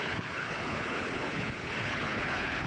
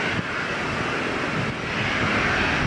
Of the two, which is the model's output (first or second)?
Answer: first